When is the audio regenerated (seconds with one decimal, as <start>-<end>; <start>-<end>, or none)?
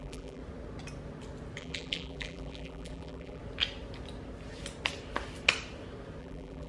0.0-0.4; 1.6-3.4; 6.2-6.7